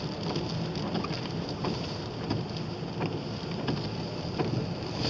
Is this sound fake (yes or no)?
no